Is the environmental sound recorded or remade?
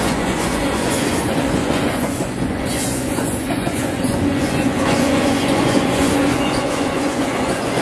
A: remade